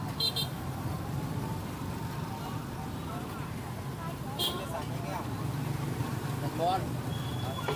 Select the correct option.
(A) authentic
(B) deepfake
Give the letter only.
A